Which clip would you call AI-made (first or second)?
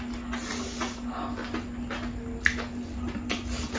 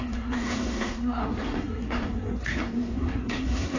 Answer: second